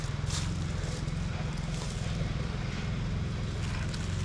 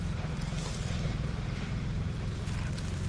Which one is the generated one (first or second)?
second